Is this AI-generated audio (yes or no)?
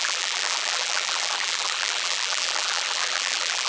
yes